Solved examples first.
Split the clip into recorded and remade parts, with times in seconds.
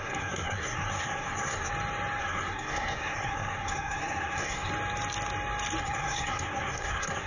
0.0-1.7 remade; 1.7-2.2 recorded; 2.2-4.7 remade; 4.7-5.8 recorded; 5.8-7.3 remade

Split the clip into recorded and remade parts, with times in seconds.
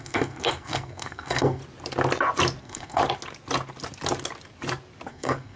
0.0-1.6 remade; 1.6-2.6 recorded; 2.6-3.0 remade; 3.0-5.1 recorded; 5.1-5.6 remade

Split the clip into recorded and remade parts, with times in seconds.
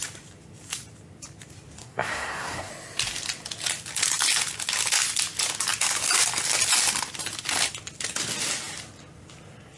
0.0-1.8 recorded; 1.8-2.7 remade; 2.7-9.8 recorded